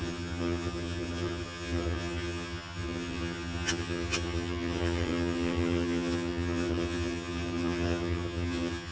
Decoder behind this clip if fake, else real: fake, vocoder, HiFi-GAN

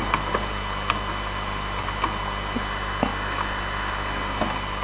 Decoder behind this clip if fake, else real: real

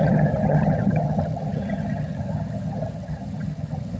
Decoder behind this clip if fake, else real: fake, vocoder, HiFi-GAN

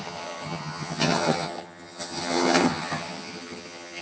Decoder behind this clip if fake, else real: fake, vocoder, HiFi-GAN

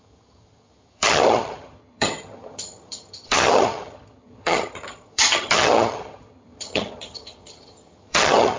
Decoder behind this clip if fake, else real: fake, vocoder, HiFi-GAN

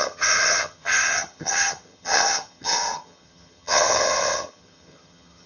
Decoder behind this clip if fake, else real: fake, vocoder, HiFi-GAN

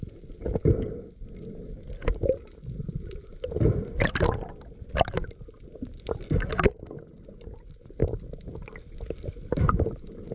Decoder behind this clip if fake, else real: real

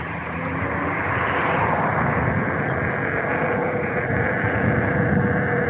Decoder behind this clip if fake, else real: real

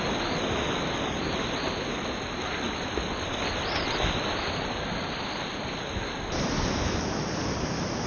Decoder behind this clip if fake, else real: real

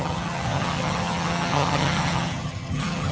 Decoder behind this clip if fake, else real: fake, vocoder, HiFi-GAN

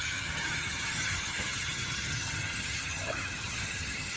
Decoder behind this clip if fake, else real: fake, vocoder, HiFi-GAN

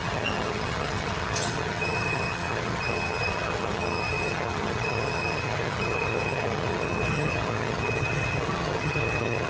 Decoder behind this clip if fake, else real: fake, vocoder, HiFi-GAN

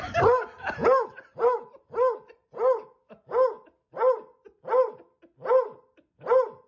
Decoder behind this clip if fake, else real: real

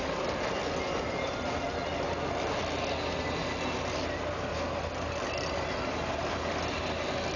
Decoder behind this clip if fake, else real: real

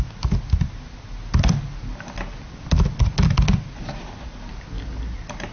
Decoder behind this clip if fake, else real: real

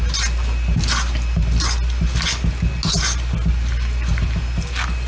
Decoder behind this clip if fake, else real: real